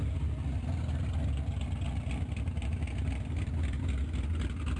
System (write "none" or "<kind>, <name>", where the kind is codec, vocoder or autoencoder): none